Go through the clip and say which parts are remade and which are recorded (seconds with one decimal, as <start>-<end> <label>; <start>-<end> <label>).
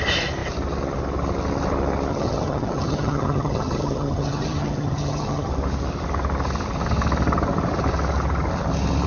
0.0-2.1 recorded; 2.1-5.5 remade; 5.5-9.1 recorded